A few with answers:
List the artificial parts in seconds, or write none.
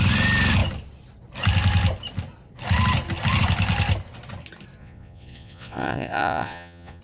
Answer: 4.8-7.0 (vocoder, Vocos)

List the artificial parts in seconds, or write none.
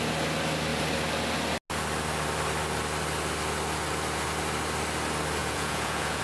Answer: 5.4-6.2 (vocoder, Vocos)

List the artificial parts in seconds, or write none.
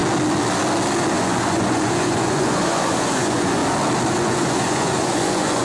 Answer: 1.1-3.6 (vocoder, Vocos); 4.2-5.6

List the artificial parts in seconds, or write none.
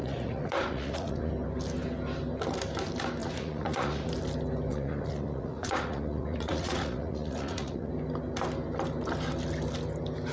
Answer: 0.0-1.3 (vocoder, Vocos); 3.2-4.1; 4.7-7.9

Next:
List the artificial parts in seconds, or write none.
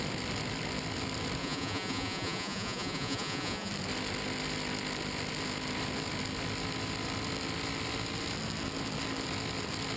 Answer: 1.4-3.7 (vocoder, Vocos)